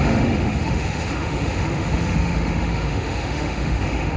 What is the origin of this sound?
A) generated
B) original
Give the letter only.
A